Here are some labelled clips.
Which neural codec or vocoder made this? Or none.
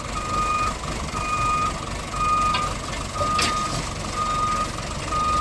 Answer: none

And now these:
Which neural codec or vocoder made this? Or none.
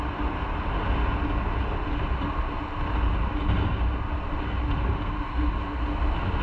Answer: none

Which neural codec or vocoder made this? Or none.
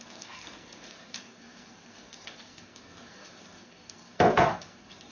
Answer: codec, SNAC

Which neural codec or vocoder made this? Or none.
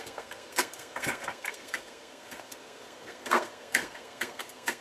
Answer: codec, SNAC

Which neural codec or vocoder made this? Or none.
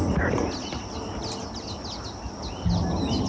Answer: none